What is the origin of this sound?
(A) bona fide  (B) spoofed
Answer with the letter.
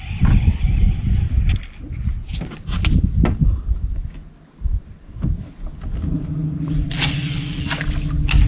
A